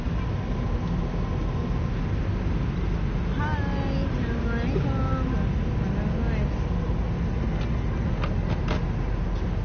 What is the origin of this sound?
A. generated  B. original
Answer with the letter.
B